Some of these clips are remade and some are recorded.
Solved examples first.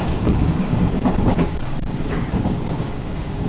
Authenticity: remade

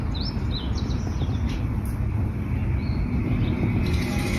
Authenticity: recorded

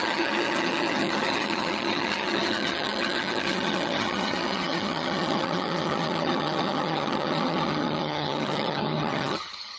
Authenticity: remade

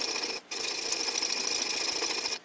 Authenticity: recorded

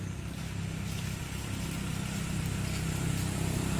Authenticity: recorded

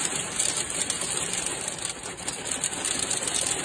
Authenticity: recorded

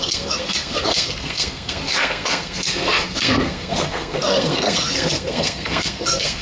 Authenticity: remade